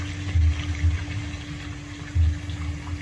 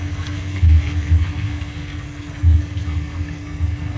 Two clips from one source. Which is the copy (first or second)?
second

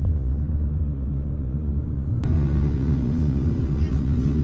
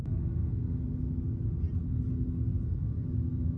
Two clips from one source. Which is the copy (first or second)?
first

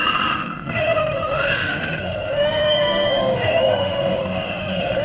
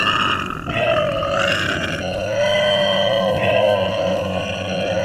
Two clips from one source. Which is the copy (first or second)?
first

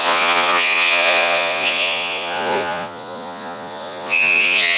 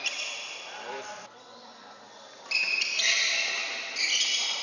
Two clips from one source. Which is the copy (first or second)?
first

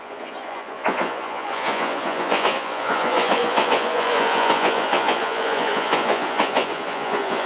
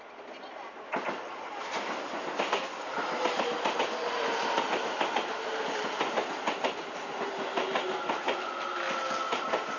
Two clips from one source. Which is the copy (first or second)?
first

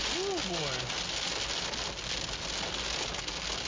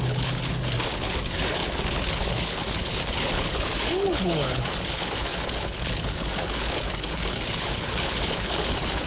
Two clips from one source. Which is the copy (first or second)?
second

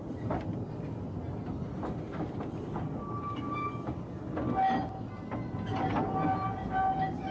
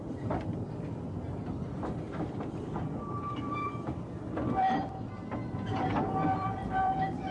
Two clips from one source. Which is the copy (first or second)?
second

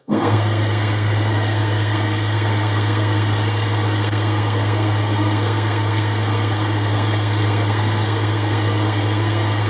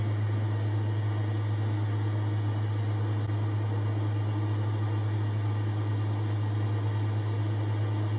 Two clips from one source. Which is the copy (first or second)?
first